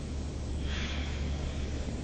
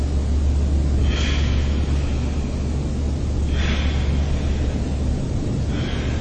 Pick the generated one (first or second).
first